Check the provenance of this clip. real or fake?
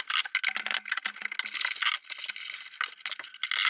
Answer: real